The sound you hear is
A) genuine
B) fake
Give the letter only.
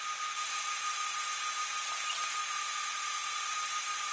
A